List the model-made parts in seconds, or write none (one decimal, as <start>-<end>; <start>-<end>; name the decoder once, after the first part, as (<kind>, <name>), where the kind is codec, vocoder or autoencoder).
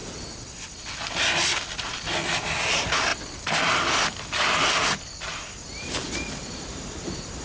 none